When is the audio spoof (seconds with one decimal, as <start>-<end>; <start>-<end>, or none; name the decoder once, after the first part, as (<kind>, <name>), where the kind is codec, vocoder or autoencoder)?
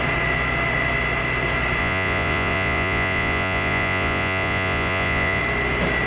1.8-5.4 (vocoder, Vocos)